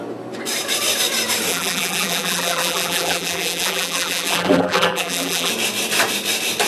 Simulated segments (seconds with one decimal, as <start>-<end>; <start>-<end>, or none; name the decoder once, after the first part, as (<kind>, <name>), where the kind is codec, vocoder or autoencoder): 1.5-5.5 (vocoder, BigVGAN v2)